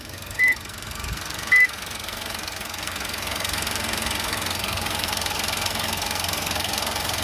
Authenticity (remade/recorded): remade